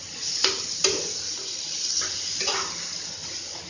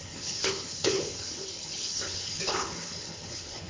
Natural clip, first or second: first